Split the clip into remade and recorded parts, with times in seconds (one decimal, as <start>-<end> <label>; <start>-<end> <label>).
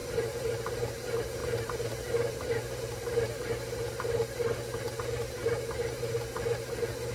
0.0-0.5 remade; 0.5-1.4 recorded; 1.4-3.5 remade; 3.5-5.4 recorded; 5.4-6.0 remade; 6.0-7.1 recorded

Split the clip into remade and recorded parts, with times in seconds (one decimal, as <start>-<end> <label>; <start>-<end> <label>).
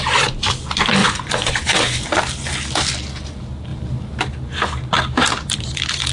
0.0-1.0 recorded; 1.0-2.1 remade; 2.1-6.1 recorded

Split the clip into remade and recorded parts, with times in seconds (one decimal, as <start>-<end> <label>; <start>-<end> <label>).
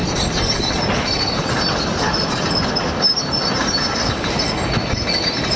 0.0-5.6 recorded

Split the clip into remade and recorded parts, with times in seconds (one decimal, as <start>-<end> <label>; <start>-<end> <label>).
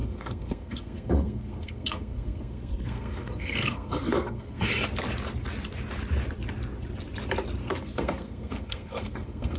0.0-4.6 remade; 4.6-7.6 recorded; 7.6-9.6 remade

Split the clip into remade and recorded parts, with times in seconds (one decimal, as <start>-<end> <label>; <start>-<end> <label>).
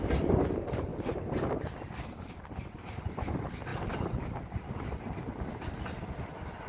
0.0-6.7 recorded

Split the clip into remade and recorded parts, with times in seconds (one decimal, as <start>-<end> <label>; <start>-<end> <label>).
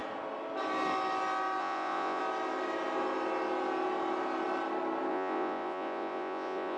0.0-1.6 recorded; 1.6-2.2 remade; 2.2-5.1 recorded; 5.1-6.8 remade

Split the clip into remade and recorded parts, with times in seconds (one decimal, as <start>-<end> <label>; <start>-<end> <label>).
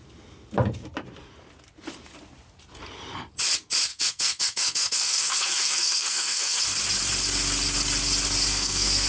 0.0-3.9 recorded; 3.9-6.6 remade; 6.6-8.5 recorded; 8.5-9.1 remade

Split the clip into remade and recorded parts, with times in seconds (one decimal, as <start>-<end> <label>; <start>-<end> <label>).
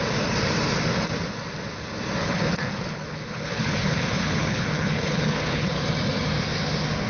0.0-2.2 recorded; 2.2-5.8 remade; 5.8-7.1 recorded